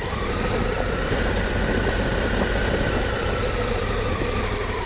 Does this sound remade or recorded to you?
remade